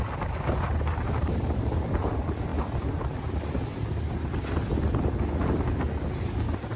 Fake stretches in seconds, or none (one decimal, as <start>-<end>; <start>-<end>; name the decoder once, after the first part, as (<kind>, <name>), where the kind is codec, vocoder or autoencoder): none